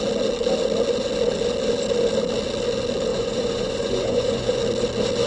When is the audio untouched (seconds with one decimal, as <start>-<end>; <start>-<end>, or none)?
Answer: 0.0-3.1; 4.6-5.3